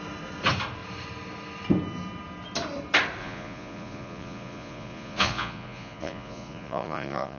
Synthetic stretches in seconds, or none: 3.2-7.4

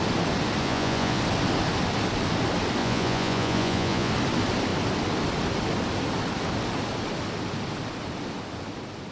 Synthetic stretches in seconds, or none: 0.6-1.2; 2.8-4.1

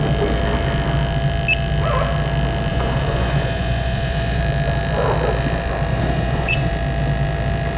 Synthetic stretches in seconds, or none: 2.7-4.4; 5.9-6.7